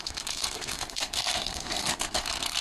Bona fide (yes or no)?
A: no